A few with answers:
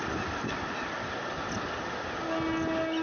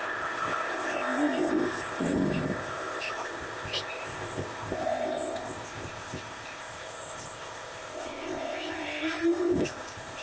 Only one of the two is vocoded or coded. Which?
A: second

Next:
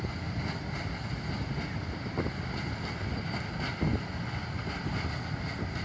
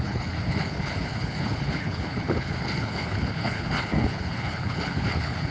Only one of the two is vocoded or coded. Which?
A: second